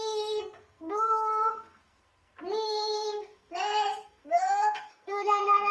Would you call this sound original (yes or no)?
no